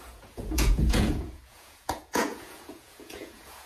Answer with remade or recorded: remade